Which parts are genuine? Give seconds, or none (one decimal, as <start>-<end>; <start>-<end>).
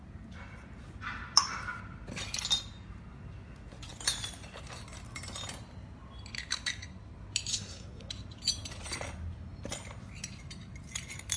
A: 0.0-7.5; 8.1-11.4